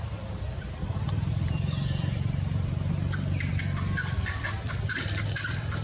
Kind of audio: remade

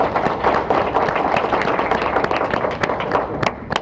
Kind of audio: recorded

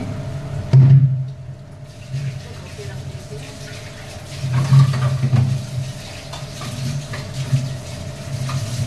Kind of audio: recorded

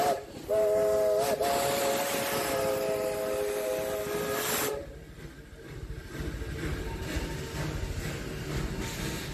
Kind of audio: recorded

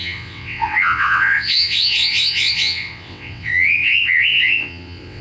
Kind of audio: remade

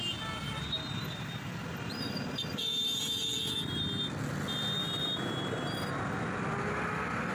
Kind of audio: recorded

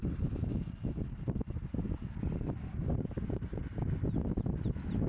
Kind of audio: recorded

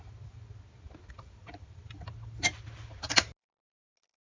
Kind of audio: recorded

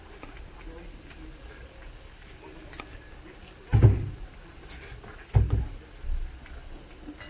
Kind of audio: recorded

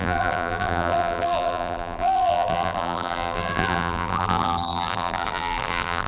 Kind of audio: remade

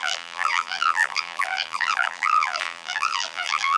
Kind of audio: remade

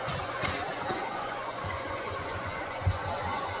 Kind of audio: remade